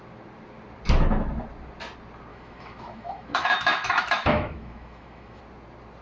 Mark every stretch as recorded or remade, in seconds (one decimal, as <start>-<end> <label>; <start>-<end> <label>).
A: 0.0-2.3 recorded; 2.3-5.4 remade; 5.4-6.0 recorded